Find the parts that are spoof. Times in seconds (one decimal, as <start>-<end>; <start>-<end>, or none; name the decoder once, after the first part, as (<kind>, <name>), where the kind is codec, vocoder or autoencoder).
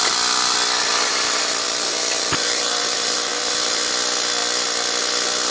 0.9-3.9 (vocoder, BigVGAN v2)